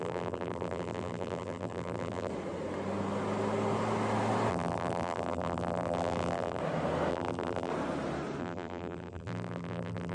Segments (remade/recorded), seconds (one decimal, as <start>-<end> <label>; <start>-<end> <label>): 0.0-2.3 remade; 2.3-4.5 recorded; 4.5-6.6 remade; 6.6-7.1 recorded; 7.1-7.7 remade; 7.7-8.4 recorded; 8.4-10.1 remade